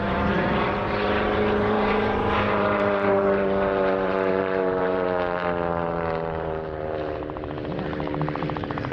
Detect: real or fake fake